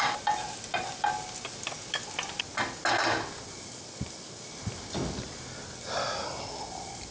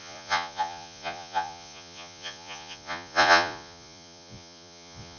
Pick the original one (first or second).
first